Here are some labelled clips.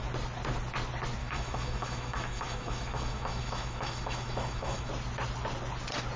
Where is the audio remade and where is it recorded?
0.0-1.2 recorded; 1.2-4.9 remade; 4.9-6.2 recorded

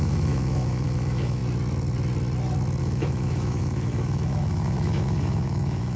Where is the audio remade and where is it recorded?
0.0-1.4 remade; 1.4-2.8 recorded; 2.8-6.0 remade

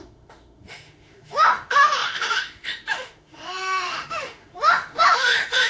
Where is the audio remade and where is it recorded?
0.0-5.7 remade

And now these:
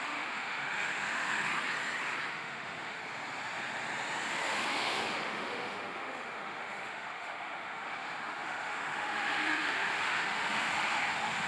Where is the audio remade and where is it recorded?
0.0-1.5 remade; 1.5-2.3 recorded; 2.3-3.0 remade; 3.0-4.3 recorded; 4.3-11.5 remade